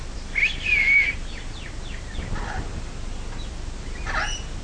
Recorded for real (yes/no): yes